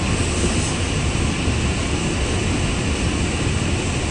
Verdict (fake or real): real